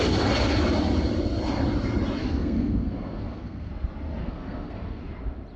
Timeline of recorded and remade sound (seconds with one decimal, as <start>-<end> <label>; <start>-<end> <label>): 0.0-2.2 recorded; 2.2-3.7 remade; 3.7-4.2 recorded; 4.2-5.0 remade; 5.0-5.6 recorded